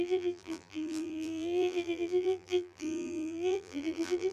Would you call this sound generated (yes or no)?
yes